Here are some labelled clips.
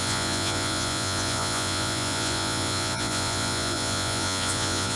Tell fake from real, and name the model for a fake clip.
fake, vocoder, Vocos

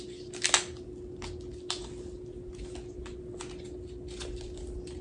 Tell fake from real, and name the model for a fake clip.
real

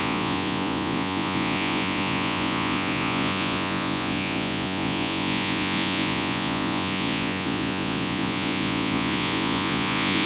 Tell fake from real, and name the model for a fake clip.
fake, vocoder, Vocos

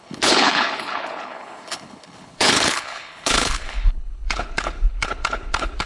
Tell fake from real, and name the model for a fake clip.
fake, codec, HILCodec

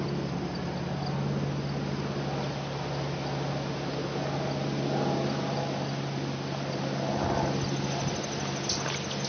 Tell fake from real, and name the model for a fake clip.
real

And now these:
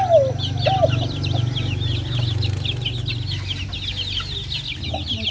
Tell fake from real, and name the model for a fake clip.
real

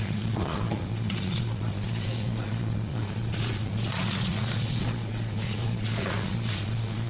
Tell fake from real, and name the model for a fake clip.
fake, vocoder, Vocos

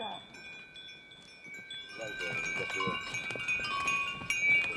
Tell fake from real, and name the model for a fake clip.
real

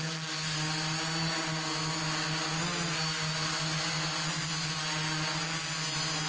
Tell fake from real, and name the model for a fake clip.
real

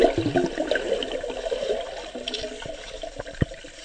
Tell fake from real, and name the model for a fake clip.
real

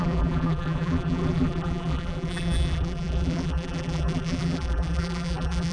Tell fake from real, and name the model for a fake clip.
fake, vocoder, BigVGAN v2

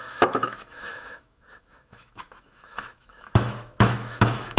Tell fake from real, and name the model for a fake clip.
fake, autoencoder, DAC-VAE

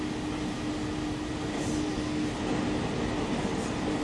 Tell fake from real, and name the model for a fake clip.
real